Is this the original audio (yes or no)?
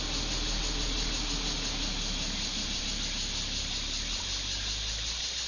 yes